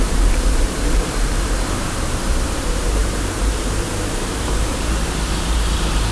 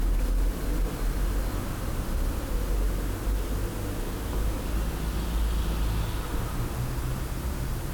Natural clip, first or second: second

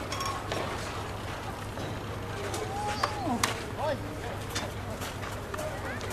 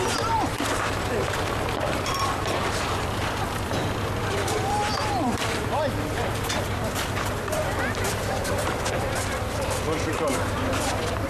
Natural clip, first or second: first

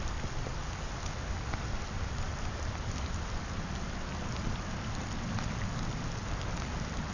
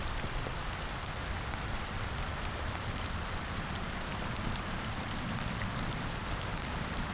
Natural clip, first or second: first